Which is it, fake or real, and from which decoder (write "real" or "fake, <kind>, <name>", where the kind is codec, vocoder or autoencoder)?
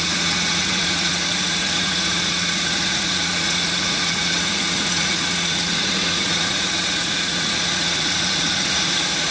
fake, vocoder, Vocos